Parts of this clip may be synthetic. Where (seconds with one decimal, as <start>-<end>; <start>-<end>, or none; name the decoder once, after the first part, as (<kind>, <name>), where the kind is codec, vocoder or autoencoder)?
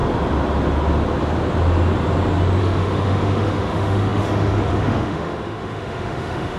2.6-6.6 (autoencoder, DAC-VAE)